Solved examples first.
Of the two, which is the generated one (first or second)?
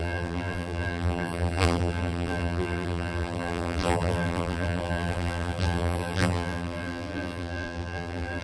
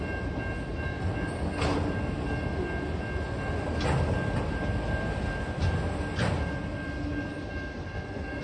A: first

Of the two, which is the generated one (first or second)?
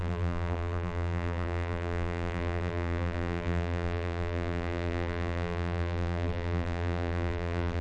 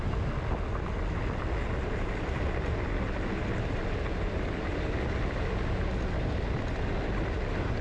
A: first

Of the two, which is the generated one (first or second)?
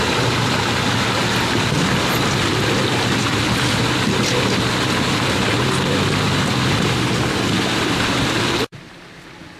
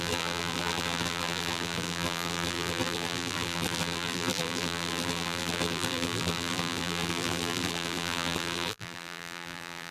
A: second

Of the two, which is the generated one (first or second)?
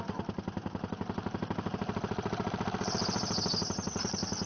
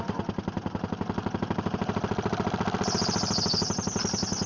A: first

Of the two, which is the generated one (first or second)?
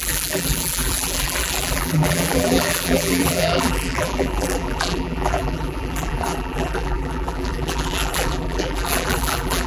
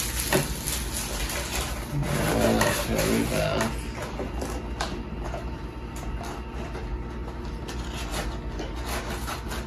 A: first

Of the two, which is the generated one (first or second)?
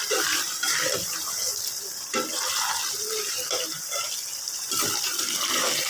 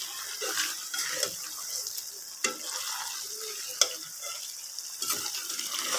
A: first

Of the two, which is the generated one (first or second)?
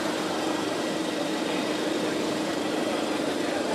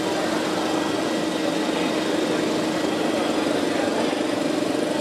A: first